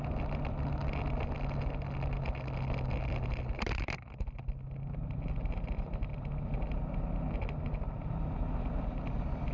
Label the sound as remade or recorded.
recorded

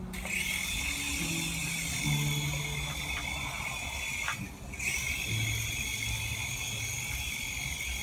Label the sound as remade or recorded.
recorded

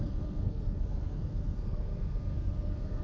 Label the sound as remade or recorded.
remade